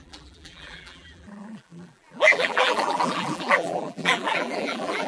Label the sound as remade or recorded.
remade